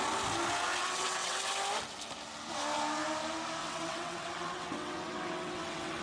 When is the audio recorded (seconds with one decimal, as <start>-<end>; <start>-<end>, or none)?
0.0-0.8; 1.4-3.6